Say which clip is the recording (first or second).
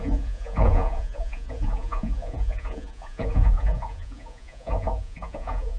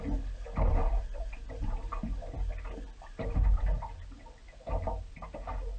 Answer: second